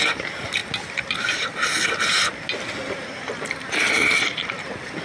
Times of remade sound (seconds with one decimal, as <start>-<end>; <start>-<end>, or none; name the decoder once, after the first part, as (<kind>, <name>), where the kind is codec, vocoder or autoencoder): 0.0-0.6 (vocoder, BigVGAN v2); 3.6-5.0